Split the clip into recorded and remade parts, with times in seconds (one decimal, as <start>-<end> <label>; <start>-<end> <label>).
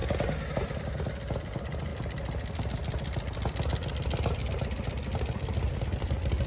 0.0-6.5 recorded